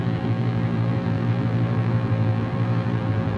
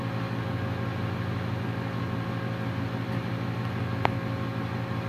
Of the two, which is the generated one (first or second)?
first